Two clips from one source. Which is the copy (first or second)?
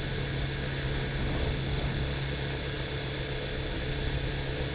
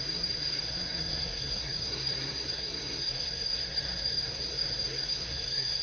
second